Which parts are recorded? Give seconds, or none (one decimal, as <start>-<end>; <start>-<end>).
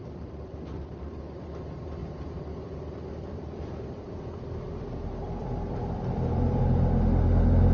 0.6-2.0; 6.6-7.7